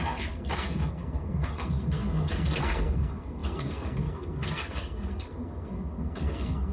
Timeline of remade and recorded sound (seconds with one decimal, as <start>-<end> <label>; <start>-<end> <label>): 0.0-6.7 remade